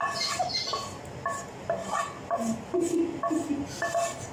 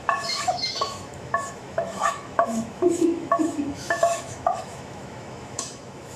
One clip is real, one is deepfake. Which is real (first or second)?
first